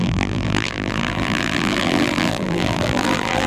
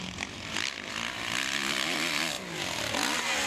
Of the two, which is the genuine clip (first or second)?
second